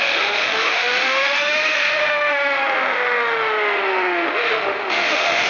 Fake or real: fake